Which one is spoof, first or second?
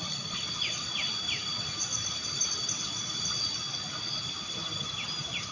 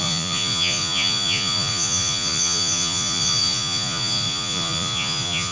second